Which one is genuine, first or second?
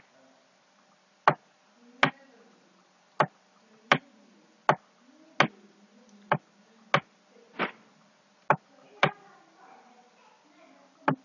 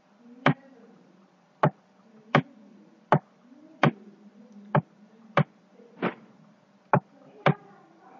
first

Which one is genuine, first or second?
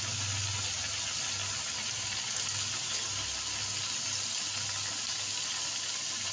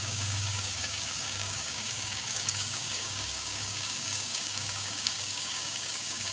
first